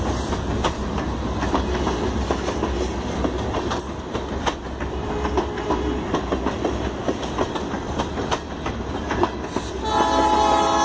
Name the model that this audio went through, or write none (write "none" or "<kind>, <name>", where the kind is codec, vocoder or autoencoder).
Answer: none